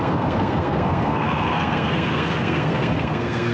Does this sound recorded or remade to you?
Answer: remade